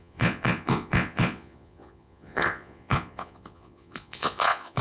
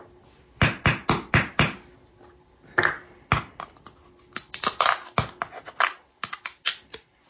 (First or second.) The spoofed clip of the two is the first